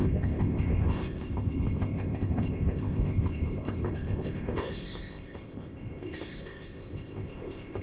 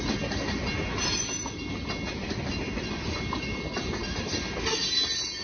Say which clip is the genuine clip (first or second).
second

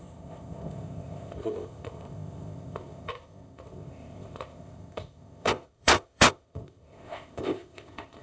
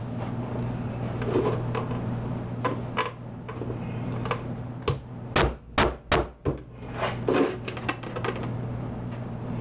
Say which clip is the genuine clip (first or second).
second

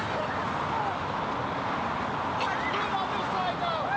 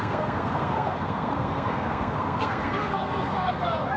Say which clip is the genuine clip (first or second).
first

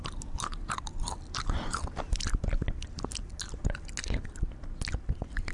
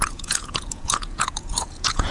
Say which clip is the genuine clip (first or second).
first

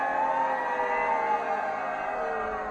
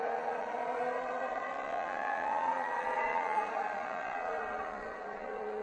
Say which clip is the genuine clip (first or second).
first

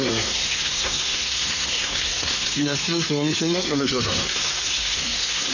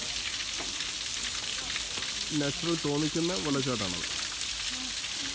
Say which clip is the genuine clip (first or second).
second